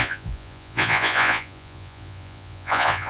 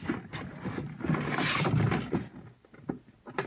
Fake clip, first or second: first